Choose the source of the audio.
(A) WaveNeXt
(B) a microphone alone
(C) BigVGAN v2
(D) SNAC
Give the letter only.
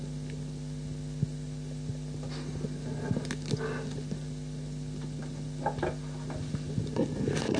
B